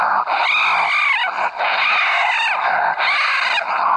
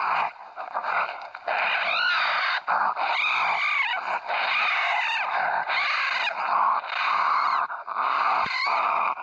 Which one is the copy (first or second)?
second